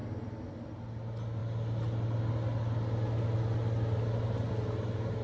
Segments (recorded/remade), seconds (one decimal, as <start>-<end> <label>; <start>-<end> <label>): 0.0-5.2 recorded

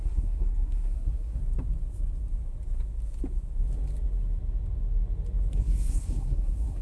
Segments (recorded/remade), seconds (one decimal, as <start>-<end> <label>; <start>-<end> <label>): 0.0-1.4 remade; 1.4-5.5 recorded; 5.5-6.8 remade

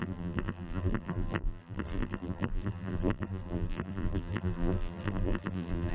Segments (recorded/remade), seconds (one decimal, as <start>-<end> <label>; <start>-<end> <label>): 0.0-5.9 remade

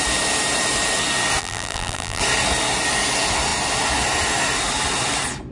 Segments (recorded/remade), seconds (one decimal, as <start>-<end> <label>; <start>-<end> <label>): 0.0-1.4 recorded; 1.4-2.2 remade; 2.2-5.5 recorded

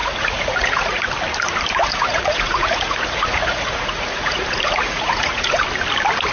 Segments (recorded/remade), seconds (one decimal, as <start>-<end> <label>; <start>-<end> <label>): 0.0-1.0 remade; 1.0-1.8 recorded; 1.8-5.6 remade; 5.6-6.3 recorded

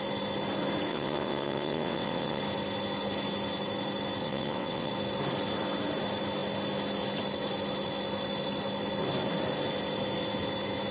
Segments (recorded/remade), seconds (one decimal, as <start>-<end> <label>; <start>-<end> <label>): 0.0-0.9 recorded; 0.9-2.4 remade; 2.4-4.2 recorded; 4.2-4.9 remade; 4.9-10.9 recorded